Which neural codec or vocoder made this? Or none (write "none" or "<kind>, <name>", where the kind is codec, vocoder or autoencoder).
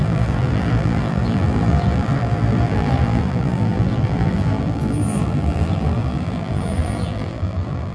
vocoder, BigVGAN v2